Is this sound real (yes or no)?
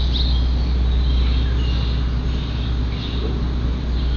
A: yes